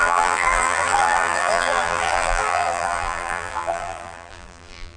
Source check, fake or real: fake